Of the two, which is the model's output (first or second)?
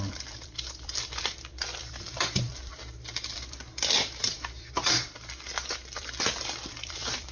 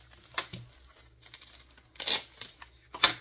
first